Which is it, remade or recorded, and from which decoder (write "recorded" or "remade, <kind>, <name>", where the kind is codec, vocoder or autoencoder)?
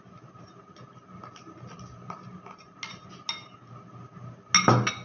recorded